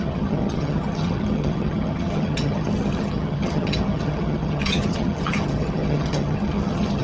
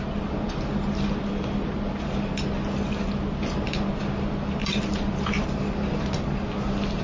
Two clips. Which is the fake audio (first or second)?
first